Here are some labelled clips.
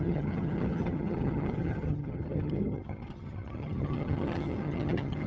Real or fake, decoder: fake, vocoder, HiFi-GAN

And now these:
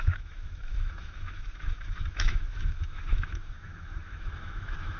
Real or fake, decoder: fake, autoencoder, DAC-VAE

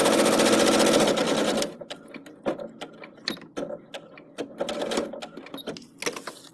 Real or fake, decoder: real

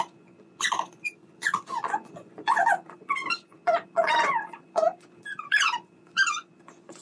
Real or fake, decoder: fake, vocoder, Vocos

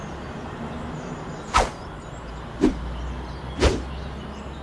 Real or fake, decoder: real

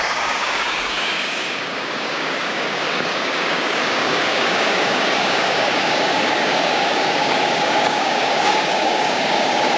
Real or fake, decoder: fake, codec, DAC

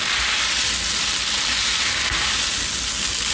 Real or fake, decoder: real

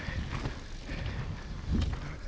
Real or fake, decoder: real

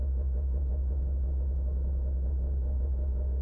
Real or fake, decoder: real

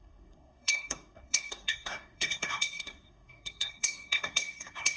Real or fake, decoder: fake, codec, SNAC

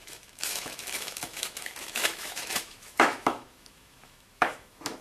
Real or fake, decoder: fake, autoencoder, DAC-VAE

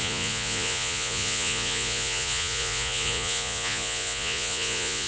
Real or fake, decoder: fake, vocoder, Vocos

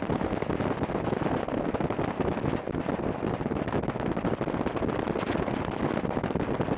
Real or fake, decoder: real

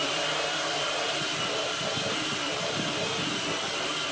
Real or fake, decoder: fake, vocoder, BigVGAN v2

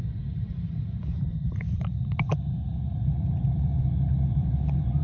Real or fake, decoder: fake, vocoder, BigVGAN v2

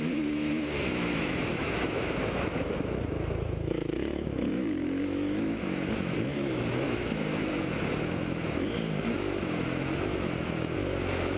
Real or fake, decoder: fake, autoencoder, DAC-VAE